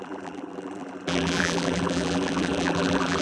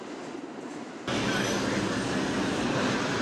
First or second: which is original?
second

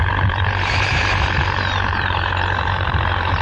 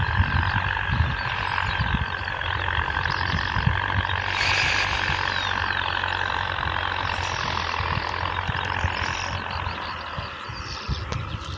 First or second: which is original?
second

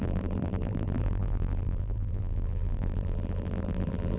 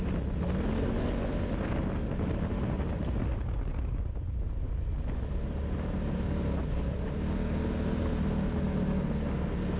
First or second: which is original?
second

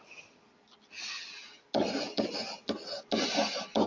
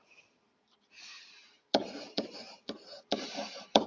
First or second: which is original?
first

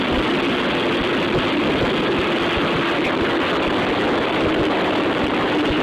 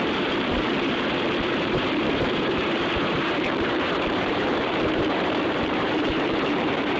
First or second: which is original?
first